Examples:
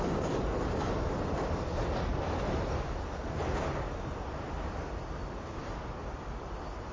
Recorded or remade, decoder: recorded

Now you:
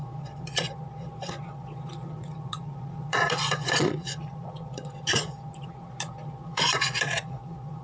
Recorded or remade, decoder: remade, vocoder, Vocos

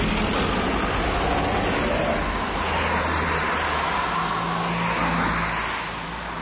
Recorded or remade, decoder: recorded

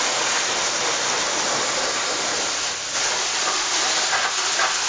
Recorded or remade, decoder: recorded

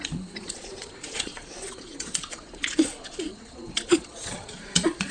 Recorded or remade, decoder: remade, vocoder, Vocos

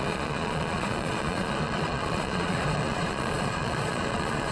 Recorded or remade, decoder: remade, vocoder, Vocos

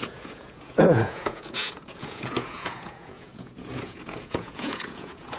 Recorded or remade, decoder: remade, vocoder, Vocos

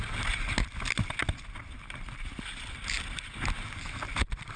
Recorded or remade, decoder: recorded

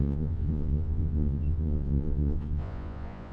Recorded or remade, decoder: remade, vocoder, Vocos